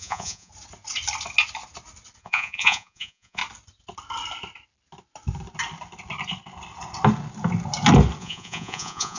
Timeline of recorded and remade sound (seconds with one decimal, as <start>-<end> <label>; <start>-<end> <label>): 0.0-0.5 remade; 0.5-2.2 recorded; 2.2-3.4 remade; 3.4-8.2 recorded; 8.2-9.2 remade